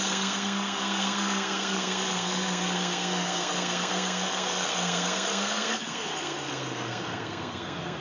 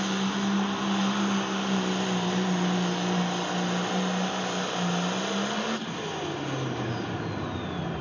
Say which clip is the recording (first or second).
second